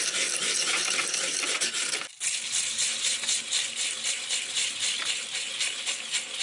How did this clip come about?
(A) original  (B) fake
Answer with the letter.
B